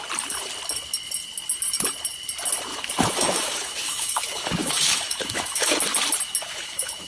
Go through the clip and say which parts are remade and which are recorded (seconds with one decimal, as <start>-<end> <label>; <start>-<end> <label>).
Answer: 0.0-2.7 recorded; 2.7-5.7 remade; 5.7-6.4 recorded; 6.4-7.1 remade